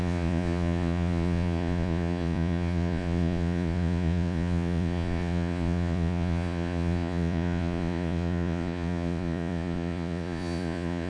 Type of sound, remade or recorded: remade